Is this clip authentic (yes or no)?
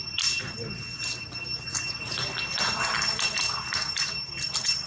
yes